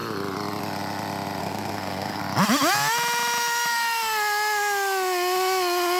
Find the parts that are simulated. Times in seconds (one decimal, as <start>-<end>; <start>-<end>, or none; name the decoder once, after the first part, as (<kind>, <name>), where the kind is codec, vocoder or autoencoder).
1.4-2.2 (codec, SNAC)